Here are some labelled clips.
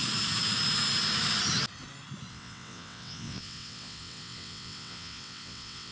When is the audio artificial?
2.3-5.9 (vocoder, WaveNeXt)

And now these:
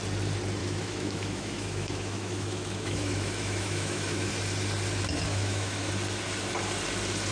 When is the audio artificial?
0.6-4.3 (autoencoder, DAC-VAE); 5.3-5.9

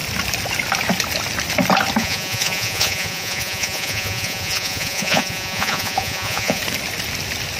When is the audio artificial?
2.0-6.6 (vocoder, Vocos)

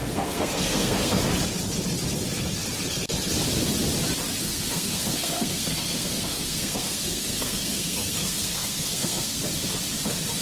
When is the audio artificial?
0.0-1.2 (codec, SNAC); 4.4-9.4

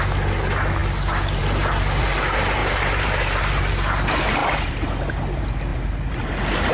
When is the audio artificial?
2.6-3.4 (vocoder, BigVGAN v2); 4.4-4.9; 5.7-6.7